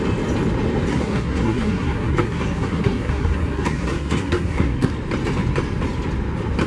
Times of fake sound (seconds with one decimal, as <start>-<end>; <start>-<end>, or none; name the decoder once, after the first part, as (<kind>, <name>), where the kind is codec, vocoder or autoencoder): 0.9-4.9 (codec, SNAC)